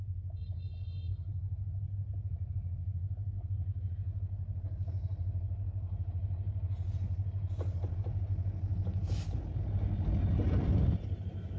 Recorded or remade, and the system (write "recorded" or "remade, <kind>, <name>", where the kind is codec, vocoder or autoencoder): recorded